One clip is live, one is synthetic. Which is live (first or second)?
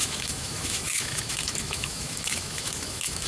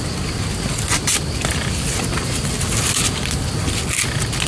second